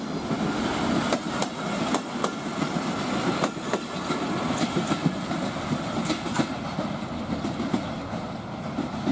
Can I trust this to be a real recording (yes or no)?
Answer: yes